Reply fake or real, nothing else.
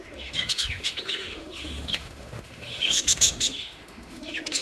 fake